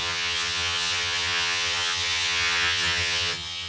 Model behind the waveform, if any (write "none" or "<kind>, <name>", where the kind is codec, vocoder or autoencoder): vocoder, HiFi-GAN